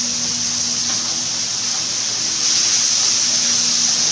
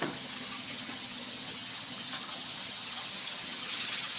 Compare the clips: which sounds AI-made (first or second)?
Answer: second